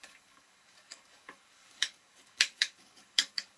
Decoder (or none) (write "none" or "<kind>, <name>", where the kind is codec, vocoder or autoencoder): codec, DAC